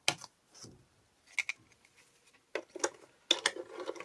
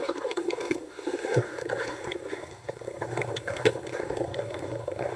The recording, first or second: first